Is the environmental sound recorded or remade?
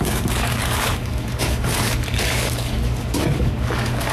remade